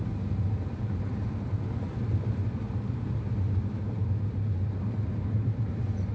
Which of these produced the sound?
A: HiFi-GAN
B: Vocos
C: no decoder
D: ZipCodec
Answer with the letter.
C